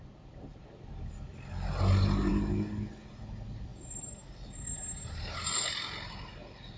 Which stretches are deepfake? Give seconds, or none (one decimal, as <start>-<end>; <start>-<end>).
none